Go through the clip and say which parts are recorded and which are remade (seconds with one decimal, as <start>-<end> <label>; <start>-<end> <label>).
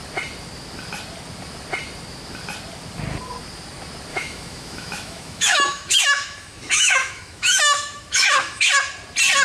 0.0-4.1 recorded; 4.1-8.7 remade; 8.7-9.4 recorded